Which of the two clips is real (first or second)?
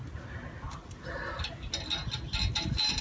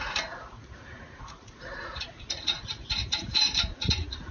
first